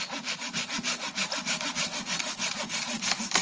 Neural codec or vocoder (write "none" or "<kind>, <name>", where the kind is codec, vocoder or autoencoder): none